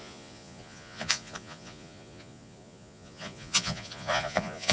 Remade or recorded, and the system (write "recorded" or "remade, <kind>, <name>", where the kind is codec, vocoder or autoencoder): remade, vocoder, Vocos